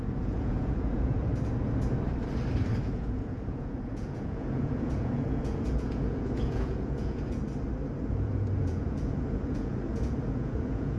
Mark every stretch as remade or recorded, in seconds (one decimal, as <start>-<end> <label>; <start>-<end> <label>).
0.0-1.3 remade; 1.3-2.8 recorded; 2.8-7.4 remade; 7.4-8.1 recorded; 8.1-11.0 remade